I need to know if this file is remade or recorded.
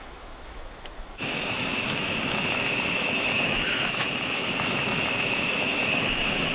remade